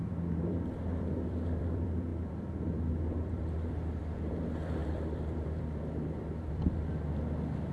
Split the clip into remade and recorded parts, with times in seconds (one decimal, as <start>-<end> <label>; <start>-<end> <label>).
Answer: 0.0-6.8 remade; 6.8-7.7 recorded